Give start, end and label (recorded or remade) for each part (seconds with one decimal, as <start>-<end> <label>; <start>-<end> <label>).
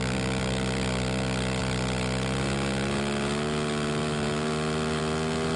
0.0-5.6 recorded